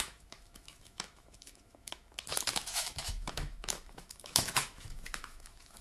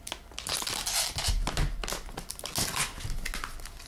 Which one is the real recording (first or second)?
second